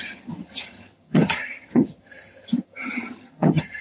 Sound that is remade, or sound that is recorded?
remade